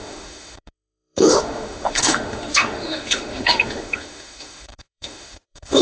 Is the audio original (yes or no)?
no